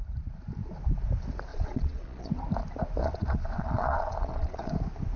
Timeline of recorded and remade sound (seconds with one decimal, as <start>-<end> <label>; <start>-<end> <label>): 0.0-1.5 recorded; 1.5-2.3 remade; 2.3-3.0 recorded; 3.0-4.7 remade; 4.7-5.2 recorded